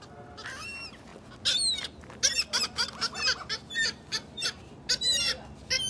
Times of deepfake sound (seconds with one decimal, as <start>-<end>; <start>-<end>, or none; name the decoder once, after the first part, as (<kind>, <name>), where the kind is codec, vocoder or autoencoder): none